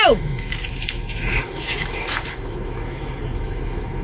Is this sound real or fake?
fake